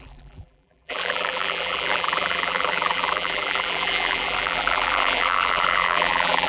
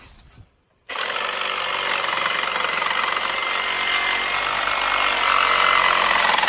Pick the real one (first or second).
second